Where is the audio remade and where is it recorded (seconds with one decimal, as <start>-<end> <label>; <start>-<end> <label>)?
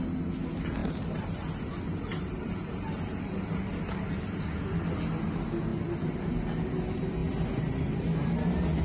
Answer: 0.0-0.8 recorded; 0.8-4.4 remade; 4.4-5.7 recorded; 5.7-6.3 remade; 6.3-8.8 recorded